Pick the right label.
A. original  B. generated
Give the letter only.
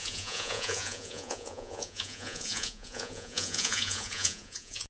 B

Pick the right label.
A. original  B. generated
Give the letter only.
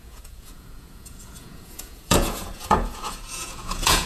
B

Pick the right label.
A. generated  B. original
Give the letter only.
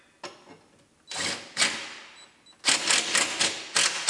B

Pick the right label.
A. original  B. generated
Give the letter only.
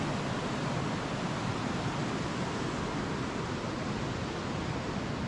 A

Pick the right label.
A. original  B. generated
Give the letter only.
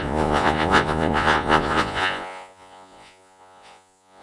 B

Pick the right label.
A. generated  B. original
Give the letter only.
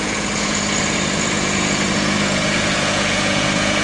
A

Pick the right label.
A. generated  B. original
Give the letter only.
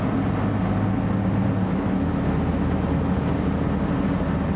B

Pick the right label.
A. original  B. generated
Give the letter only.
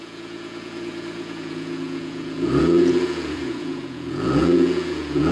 B